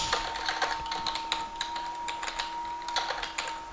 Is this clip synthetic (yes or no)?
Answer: no